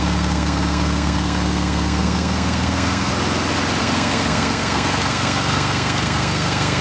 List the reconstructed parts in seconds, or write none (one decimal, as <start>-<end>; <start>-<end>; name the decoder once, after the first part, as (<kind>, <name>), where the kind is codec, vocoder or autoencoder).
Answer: 0.0-3.1 (codec, SNAC); 3.8-6.8